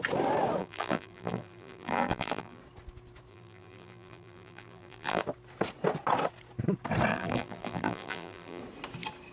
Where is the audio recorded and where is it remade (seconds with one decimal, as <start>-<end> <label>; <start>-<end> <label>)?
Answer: 0.0-0.6 recorded; 0.6-2.6 remade; 2.6-3.3 recorded; 3.3-5.2 remade; 5.2-7.1 recorded; 7.1-8.6 remade; 8.6-9.3 recorded